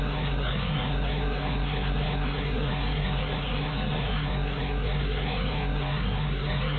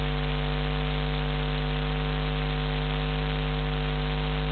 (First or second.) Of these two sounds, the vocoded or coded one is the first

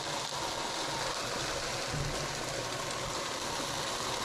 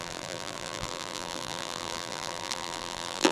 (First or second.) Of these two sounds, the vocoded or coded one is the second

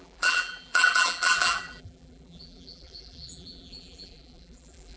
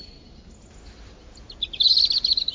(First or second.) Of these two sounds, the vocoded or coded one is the first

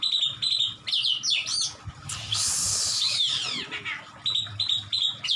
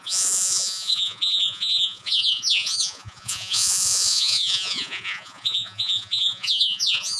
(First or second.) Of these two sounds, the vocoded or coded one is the second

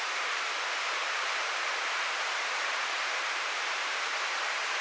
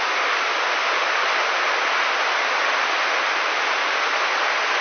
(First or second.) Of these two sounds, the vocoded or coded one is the first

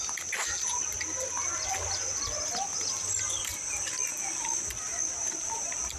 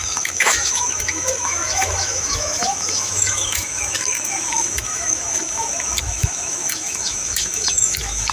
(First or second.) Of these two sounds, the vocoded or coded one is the second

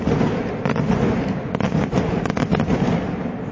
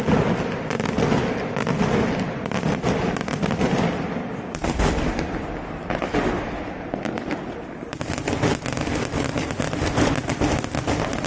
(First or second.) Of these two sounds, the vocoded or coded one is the first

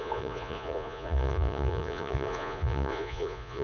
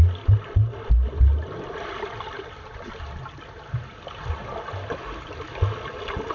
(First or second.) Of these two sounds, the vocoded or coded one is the first